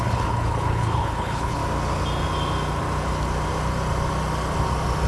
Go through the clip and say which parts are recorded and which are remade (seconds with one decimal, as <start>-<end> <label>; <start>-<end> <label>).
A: 0.0-1.6 remade; 1.6-5.1 recorded